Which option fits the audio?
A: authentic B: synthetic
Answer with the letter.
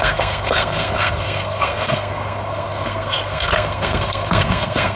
B